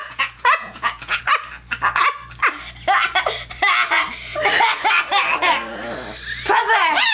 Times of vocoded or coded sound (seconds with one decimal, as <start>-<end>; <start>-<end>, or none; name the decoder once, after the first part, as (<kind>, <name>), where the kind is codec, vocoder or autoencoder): 0.0-1.2 (vocoder, Vocos)